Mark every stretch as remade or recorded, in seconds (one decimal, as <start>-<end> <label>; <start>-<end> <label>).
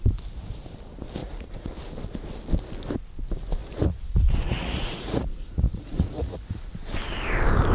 0.0-1.2 recorded; 1.2-1.7 remade; 1.7-3.6 recorded; 3.6-6.7 remade; 6.7-7.7 recorded